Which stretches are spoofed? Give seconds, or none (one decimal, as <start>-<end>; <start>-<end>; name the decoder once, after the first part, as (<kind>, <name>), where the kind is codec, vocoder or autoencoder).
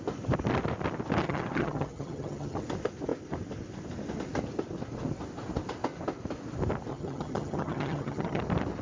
1.2-2.6 (vocoder, HiFi-GAN); 6.9-8.4